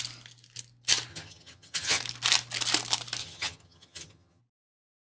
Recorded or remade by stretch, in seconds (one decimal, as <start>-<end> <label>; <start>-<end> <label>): 0.0-1.1 recorded; 1.1-2.0 remade; 2.0-3.2 recorded; 3.2-4.4 remade; 4.4-5.1 recorded